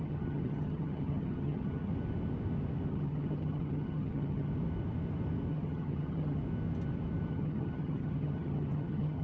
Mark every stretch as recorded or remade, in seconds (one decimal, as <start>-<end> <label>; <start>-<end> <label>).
0.0-1.9 remade; 1.9-2.9 recorded; 2.9-4.5 remade; 4.5-5.5 recorded; 5.5-6.4 remade; 6.4-7.3 recorded; 7.3-9.2 remade

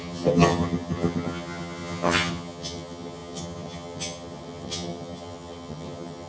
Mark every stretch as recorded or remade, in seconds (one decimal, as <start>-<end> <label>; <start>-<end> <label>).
0.0-6.3 remade